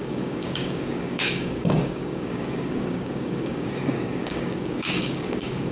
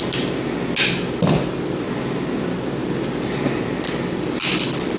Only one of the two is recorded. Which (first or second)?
second